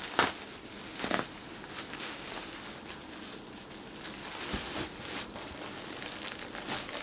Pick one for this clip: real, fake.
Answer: real